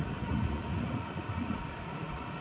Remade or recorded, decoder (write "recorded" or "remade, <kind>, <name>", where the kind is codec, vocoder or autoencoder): remade, vocoder, Vocos